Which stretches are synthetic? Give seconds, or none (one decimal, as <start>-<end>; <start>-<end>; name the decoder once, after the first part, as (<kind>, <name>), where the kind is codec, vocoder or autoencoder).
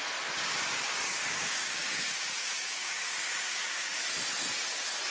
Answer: 0.8-4.0 (codec, DAC)